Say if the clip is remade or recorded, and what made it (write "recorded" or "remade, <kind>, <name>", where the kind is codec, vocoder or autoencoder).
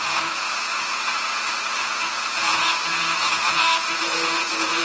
remade, vocoder, Vocos